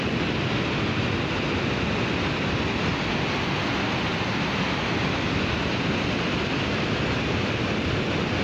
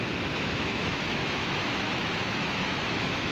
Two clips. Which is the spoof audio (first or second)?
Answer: second